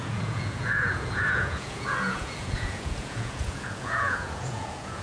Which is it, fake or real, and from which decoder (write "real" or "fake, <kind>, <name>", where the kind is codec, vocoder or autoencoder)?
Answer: fake, vocoder, Vocos